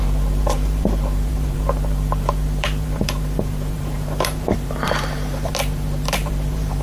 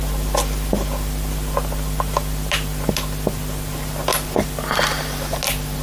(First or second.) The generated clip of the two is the first